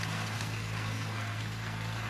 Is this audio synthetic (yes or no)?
yes